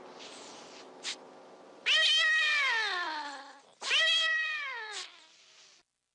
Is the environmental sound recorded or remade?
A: recorded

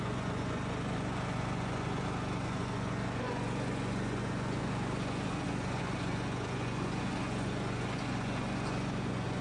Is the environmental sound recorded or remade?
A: remade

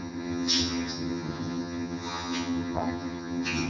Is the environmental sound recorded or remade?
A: remade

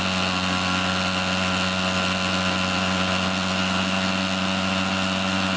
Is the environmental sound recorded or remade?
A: recorded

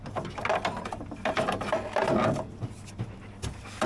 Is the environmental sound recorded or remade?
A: recorded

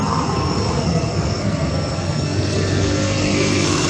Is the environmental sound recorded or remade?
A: remade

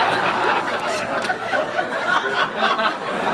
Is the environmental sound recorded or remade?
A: remade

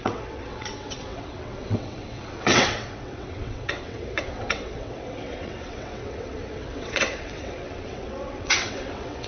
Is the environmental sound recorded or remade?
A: remade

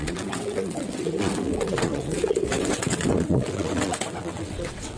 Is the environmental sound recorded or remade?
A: remade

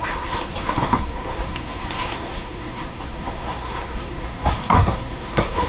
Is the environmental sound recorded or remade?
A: remade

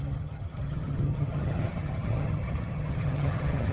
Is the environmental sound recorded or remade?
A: remade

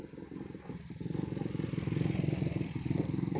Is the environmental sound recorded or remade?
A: recorded